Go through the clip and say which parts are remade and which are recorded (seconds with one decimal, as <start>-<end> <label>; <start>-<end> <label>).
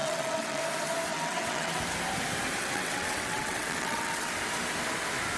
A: 0.0-0.6 remade; 0.6-1.1 recorded; 1.1-1.8 remade; 1.8-2.6 recorded; 2.6-4.3 remade; 4.3-5.4 recorded